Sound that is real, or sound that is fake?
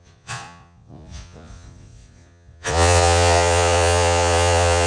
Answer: fake